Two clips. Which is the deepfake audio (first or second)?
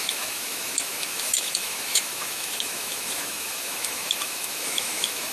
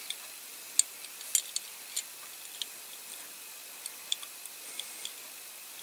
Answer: first